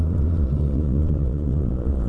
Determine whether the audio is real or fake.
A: fake